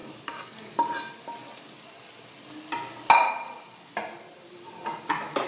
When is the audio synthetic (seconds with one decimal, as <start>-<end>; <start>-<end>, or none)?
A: none